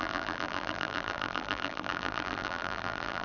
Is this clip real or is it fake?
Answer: fake